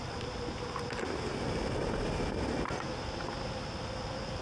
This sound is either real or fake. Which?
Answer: real